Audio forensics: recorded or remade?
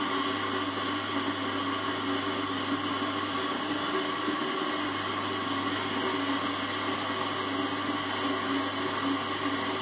recorded